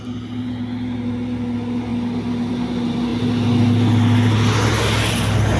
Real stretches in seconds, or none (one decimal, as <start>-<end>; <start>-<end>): 0.0-5.6